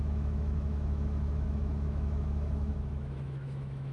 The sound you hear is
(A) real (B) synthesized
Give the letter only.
B